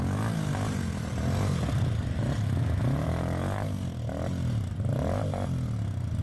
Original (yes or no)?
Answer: yes